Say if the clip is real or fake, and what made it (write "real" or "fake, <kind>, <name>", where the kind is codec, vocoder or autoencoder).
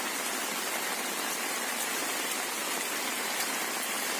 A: real